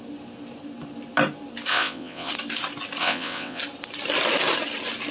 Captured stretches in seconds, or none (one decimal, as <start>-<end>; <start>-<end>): 0.0-1.7; 2.3-3.0; 3.6-5.1